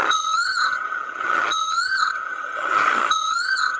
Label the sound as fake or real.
fake